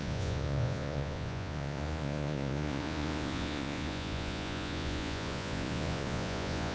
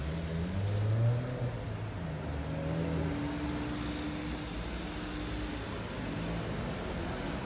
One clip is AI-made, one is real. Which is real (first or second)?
second